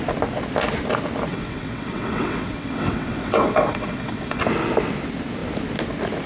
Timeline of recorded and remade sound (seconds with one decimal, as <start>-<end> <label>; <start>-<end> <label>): 0.0-1.3 recorded; 1.3-4.4 remade; 4.4-6.3 recorded